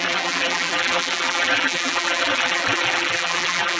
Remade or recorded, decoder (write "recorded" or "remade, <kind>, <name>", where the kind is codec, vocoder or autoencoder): remade, vocoder, BigVGAN v2